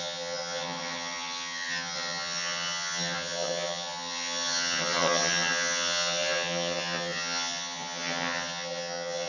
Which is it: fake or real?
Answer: fake